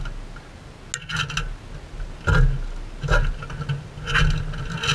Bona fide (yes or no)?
yes